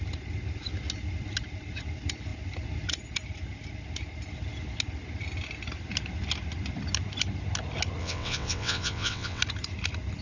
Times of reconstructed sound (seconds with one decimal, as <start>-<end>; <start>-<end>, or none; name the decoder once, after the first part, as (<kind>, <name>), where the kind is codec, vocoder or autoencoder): 8.0-9.4 (vocoder, WaveNeXt)